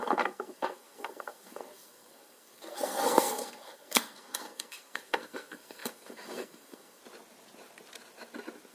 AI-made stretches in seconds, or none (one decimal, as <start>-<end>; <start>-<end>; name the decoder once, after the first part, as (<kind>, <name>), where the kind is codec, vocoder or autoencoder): 0.0-7.0 (codec, SNAC)